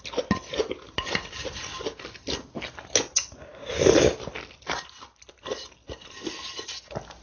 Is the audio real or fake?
real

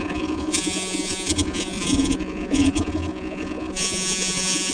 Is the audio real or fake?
fake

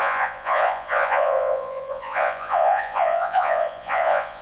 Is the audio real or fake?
fake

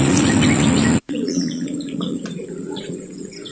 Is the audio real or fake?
fake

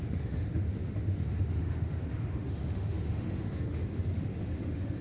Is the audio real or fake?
fake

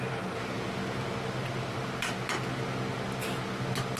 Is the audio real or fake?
real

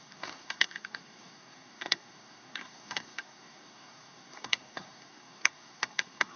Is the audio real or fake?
fake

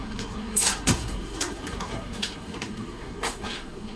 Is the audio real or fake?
fake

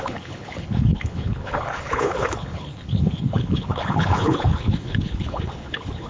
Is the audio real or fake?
fake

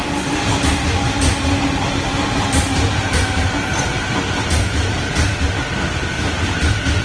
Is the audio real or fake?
real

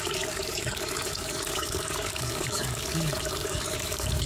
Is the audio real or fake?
fake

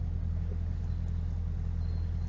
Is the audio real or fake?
real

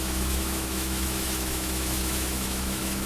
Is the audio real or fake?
fake